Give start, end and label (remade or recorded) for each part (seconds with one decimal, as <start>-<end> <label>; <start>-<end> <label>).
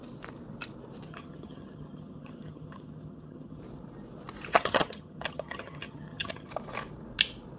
0.0-1.1 recorded; 1.1-3.6 remade; 3.6-4.5 recorded; 4.5-6.5 remade; 6.5-7.6 recorded